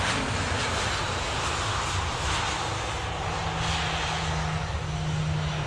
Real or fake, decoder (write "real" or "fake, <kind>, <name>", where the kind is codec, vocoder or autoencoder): real